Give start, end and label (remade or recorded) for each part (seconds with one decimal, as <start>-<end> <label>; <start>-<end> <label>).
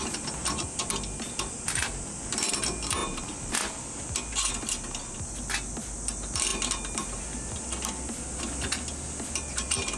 0.0-10.0 recorded